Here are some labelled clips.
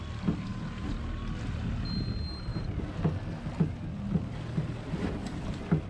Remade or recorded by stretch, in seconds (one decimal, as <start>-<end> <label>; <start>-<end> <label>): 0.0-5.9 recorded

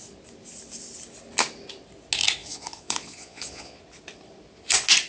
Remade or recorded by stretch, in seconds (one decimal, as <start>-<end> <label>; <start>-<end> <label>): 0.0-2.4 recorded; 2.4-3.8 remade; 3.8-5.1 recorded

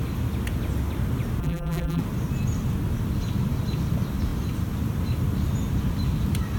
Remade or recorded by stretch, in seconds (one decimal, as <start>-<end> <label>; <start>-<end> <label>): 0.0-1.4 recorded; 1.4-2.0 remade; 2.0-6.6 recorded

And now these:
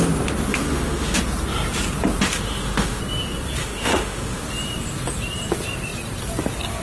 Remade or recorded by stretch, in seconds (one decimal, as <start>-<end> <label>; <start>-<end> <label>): 0.0-0.5 recorded; 0.5-1.2 remade; 1.2-2.3 recorded; 2.3-3.0 remade; 3.0-3.6 recorded; 3.6-4.4 remade; 4.4-6.8 recorded

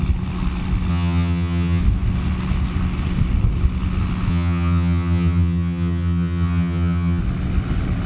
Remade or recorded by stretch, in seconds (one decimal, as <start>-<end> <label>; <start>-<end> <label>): 0.0-0.9 recorded; 0.9-1.8 remade; 1.8-4.3 recorded; 4.3-7.2 remade; 7.2-8.1 recorded

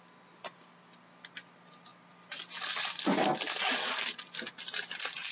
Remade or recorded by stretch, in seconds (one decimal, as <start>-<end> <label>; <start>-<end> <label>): 0.0-5.3 recorded

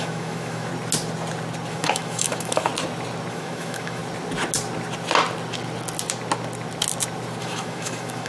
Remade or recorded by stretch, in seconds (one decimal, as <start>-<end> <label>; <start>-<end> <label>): 0.0-0.7 remade; 0.7-1.7 recorded; 1.7-2.7 remade; 2.7-3.3 recorded; 3.3-4.0 remade; 4.0-7.4 recorded; 7.4-8.3 remade

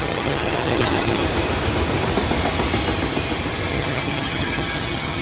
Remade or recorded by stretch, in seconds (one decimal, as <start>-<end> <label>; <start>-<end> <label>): 0.0-1.2 remade; 1.2-3.7 recorded; 3.7-5.2 remade